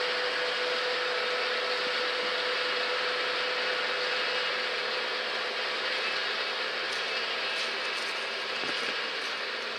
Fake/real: real